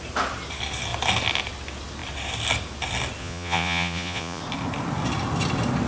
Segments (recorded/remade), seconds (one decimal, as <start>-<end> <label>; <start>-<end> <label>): 0.0-3.2 recorded; 3.2-4.4 remade; 4.4-5.9 recorded